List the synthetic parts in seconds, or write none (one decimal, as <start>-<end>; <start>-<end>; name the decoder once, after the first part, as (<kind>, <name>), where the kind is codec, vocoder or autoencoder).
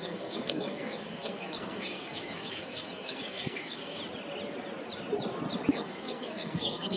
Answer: 0.0-4.0 (codec, SNAC); 5.7-7.0